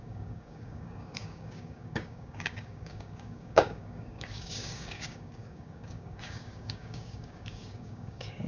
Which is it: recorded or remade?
remade